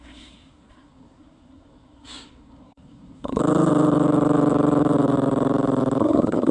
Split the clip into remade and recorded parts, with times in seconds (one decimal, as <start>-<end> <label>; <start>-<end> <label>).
0.0-3.4 remade; 3.4-6.0 recorded; 6.0-6.5 remade

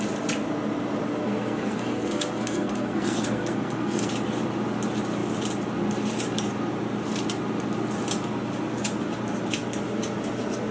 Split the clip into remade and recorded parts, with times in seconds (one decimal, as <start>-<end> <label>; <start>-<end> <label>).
0.0-1.2 recorded; 1.2-4.1 remade; 4.1-10.7 recorded

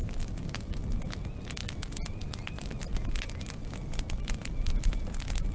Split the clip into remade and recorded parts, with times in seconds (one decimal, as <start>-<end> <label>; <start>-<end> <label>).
0.0-5.5 recorded

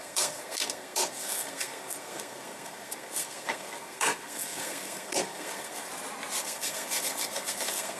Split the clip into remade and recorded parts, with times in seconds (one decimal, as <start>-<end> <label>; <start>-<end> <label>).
0.0-5.9 remade; 5.9-6.4 recorded; 6.4-8.0 remade

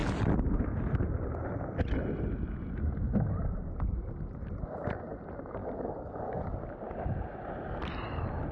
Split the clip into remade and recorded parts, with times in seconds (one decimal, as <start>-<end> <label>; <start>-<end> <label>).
0.0-5.6 recorded; 5.6-6.7 remade; 6.7-8.5 recorded

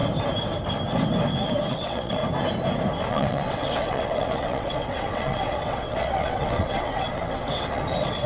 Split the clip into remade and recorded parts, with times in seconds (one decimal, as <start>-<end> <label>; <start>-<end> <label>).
0.0-1.7 recorded; 1.7-2.2 remade; 2.2-3.1 recorded; 3.1-8.3 remade

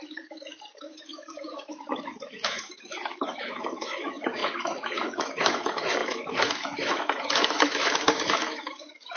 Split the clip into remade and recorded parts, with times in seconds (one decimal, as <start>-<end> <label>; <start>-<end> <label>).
0.0-9.2 remade